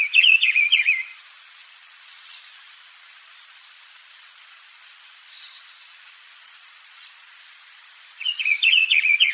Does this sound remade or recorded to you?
remade